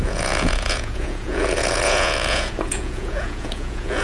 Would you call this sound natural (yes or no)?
no